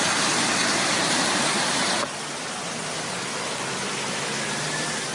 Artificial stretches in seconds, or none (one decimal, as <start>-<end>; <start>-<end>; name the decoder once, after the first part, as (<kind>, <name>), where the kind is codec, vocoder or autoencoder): 0.6-2.5 (vocoder, BigVGAN v2)

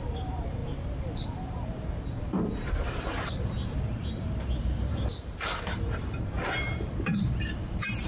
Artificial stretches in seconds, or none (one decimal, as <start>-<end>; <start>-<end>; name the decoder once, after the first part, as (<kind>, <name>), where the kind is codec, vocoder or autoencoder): 0.0-8.1 (vocoder, BigVGAN v2)

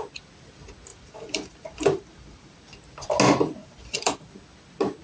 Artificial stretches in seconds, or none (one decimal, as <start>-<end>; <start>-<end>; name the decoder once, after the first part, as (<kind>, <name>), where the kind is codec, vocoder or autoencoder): 0.9-2.6 (vocoder, BigVGAN v2); 3.6-4.3

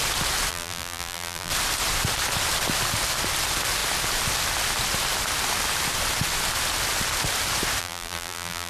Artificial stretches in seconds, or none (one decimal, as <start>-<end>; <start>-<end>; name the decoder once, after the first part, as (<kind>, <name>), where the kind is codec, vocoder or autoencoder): 0.5-1.5 (vocoder, BigVGAN v2); 7.8-8.7